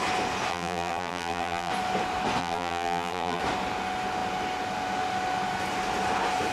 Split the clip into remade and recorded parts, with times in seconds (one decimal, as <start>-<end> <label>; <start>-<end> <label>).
0.0-0.5 recorded; 0.5-1.7 remade; 1.7-2.4 recorded; 2.4-3.4 remade; 3.4-6.5 recorded